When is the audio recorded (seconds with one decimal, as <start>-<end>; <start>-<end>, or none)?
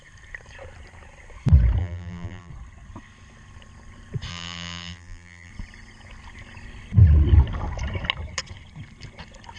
0.0-1.8; 2.5-4.3; 5.5-9.6